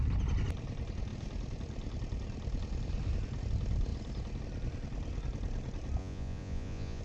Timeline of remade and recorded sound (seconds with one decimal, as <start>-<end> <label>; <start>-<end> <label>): 0.0-6.0 recorded; 6.0-7.0 remade